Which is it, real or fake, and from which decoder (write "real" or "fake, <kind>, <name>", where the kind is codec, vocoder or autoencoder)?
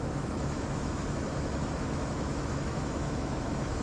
fake, autoencoder, DAC-VAE